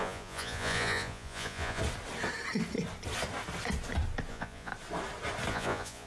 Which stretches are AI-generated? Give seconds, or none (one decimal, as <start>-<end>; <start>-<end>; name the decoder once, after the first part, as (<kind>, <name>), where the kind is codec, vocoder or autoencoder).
0.0-1.8 (vocoder, Vocos); 4.3-4.7; 5.5-6.1